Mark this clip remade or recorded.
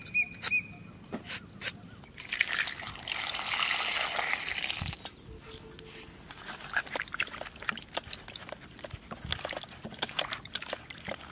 recorded